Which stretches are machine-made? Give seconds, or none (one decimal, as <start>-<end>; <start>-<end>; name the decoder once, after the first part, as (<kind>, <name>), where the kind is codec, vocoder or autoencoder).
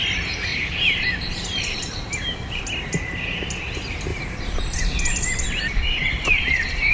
0.5-2.6 (vocoder, BigVGAN v2); 4.1-4.6